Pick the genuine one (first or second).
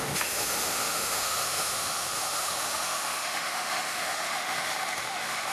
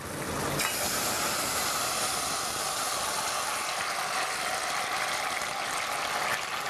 second